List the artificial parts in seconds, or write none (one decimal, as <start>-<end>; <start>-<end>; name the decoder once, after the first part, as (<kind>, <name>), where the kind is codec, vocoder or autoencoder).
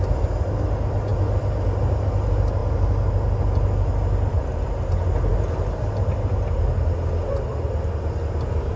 none